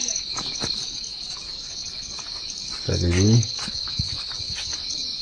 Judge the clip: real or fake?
fake